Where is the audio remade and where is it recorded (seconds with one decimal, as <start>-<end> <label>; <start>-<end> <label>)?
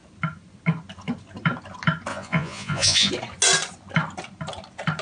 0.0-2.1 recorded; 2.1-3.1 remade; 3.1-5.0 recorded